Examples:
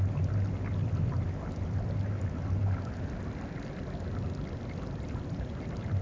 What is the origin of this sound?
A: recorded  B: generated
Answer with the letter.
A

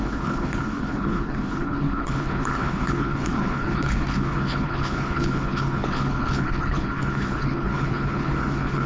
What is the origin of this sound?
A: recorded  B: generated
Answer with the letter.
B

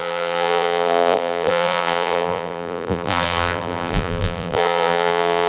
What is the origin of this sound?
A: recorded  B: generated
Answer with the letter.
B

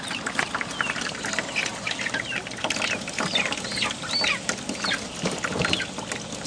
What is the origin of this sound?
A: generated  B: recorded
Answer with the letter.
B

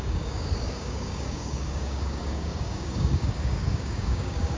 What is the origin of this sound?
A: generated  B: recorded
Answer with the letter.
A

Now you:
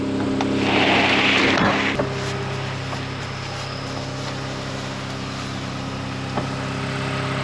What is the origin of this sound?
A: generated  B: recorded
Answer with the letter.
B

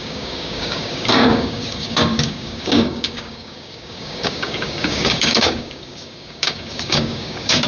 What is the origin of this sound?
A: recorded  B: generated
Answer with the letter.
B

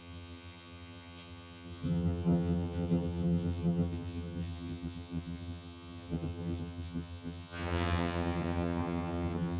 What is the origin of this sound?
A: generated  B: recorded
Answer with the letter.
A